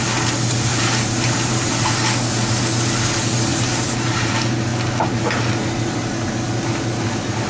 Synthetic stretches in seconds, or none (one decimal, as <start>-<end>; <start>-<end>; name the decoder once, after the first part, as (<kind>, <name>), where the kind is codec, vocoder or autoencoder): 0.7-1.7 (vocoder, BigVGAN v2); 3.5-4.3